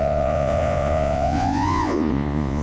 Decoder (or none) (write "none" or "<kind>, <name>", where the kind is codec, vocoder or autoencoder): vocoder, Vocos